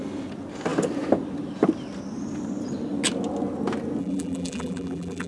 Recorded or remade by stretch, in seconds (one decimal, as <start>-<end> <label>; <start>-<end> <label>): 0.0-4.0 recorded; 4.0-5.3 remade